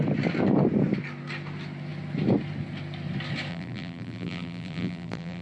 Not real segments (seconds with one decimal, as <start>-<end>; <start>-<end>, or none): 3.5-5.4